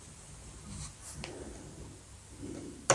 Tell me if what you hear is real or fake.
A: real